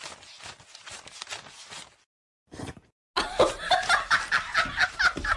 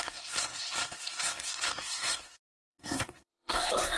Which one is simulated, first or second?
second